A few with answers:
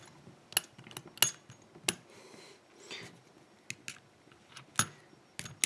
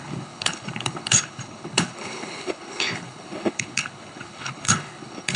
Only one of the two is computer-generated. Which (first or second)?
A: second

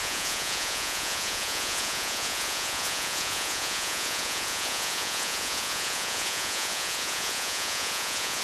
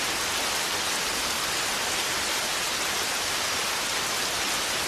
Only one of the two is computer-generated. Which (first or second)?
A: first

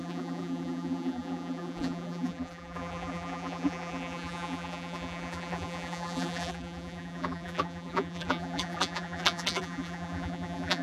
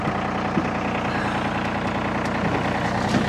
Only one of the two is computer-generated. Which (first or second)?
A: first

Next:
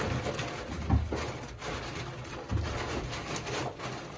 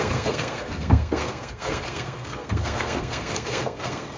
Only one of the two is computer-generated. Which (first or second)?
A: second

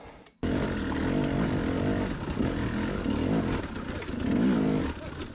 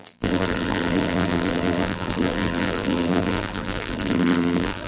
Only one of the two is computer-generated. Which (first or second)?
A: second